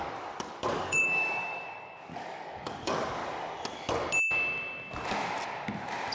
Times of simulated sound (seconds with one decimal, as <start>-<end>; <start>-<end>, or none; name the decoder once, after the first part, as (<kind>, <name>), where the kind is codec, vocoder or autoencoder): 0.0-3.2 (codec, DAC)